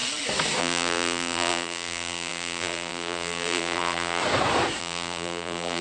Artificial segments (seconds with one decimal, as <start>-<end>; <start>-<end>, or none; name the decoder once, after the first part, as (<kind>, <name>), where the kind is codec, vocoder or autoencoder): 0.6-4.2 (vocoder, BigVGAN v2); 4.8-5.8